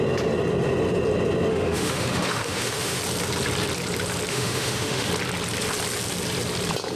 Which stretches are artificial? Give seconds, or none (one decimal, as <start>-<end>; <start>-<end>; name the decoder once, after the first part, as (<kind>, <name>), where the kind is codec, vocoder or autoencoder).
1.5-3.0 (autoencoder, DAC-VAE); 4.3-5.1